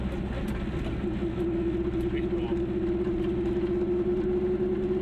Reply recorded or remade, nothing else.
recorded